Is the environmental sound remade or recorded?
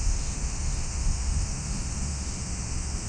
remade